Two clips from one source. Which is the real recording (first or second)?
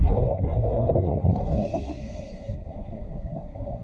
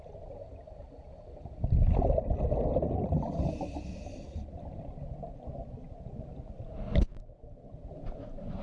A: second